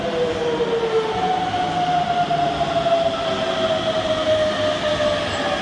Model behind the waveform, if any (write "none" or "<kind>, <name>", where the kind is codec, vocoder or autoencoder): none